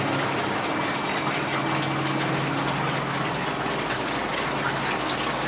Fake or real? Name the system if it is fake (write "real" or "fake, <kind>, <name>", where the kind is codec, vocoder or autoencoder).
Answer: real